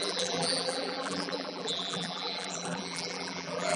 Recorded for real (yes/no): no